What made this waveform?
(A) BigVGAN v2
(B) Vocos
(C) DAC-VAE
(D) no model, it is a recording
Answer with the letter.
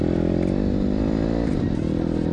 D